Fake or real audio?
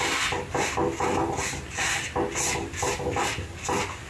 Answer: real